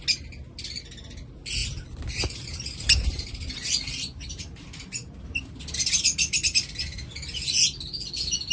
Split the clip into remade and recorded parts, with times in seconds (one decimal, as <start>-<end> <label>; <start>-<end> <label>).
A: 0.0-1.6 recorded; 1.6-5.6 remade; 5.6-8.5 recorded